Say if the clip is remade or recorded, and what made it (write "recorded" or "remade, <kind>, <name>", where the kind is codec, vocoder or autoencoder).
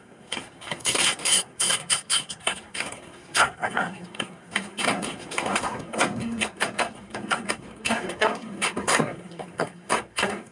remade, codec, SNAC